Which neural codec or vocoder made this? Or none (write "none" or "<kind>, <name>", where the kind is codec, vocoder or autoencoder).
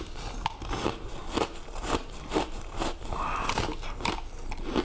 none